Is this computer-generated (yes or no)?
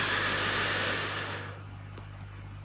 no